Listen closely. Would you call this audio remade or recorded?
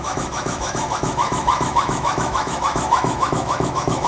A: remade